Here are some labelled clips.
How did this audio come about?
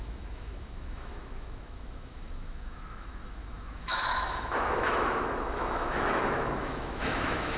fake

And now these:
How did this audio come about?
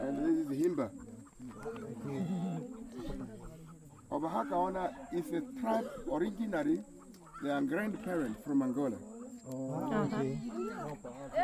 real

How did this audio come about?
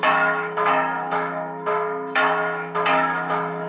fake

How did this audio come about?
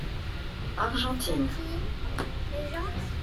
real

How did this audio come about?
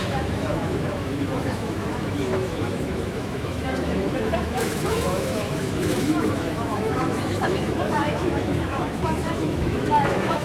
fake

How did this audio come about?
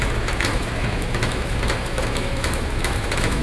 fake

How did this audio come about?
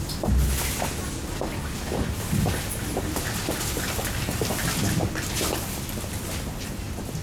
real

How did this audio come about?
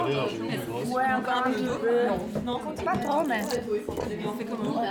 real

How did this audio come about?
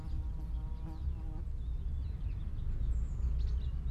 real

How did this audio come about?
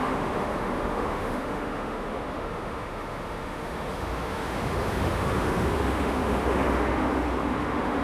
fake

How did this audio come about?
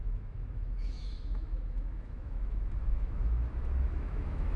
fake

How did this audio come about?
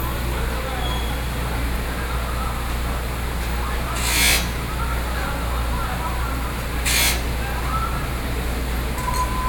real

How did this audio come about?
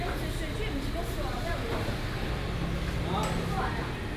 real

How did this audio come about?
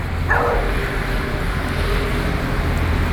real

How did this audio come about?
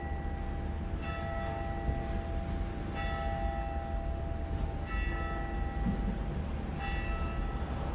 real